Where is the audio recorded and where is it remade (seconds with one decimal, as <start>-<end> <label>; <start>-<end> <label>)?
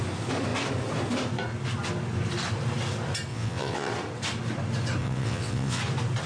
0.0-3.3 recorded; 3.3-3.9 remade; 3.9-5.0 recorded; 5.0-5.8 remade; 5.8-6.3 recorded